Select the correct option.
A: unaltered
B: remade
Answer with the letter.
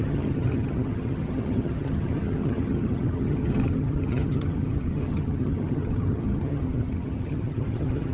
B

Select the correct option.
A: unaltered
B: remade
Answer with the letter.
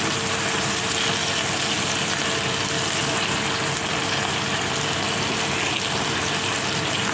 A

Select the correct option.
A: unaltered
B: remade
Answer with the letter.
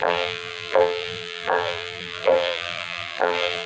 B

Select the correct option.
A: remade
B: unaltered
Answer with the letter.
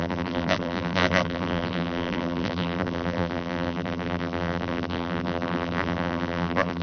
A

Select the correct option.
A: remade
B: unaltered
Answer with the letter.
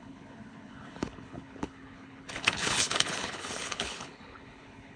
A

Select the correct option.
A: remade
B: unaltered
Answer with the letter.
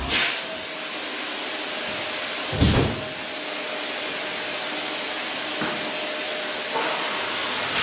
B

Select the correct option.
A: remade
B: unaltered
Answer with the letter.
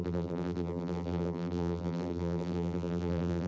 A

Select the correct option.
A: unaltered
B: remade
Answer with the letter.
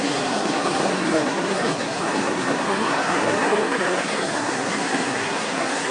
B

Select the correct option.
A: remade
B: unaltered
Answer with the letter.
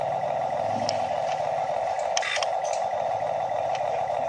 B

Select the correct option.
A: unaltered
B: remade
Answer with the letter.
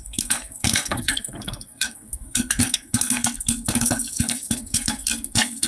B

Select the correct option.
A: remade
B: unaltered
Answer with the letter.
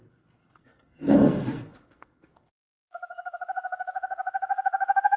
A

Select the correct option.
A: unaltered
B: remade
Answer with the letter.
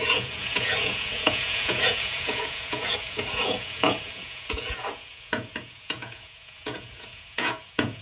B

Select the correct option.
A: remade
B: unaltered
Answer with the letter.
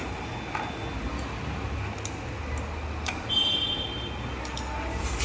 B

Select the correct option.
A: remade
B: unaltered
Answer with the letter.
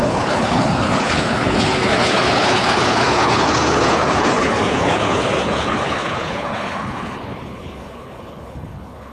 A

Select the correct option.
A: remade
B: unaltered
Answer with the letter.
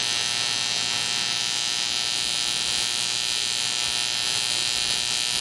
B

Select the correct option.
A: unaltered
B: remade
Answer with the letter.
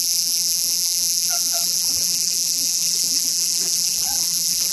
B